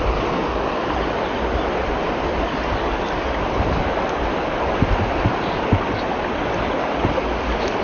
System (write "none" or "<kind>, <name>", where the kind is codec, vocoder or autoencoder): none